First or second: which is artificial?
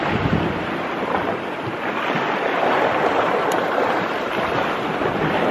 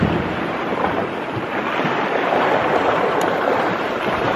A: second